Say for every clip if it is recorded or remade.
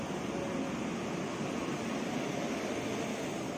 recorded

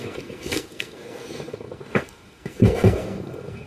remade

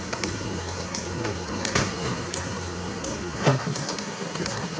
remade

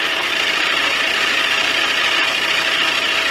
recorded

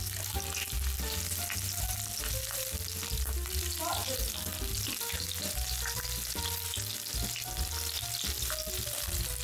recorded